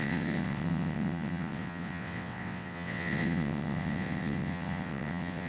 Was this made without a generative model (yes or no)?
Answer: no